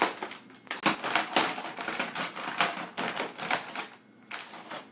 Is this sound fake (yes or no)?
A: no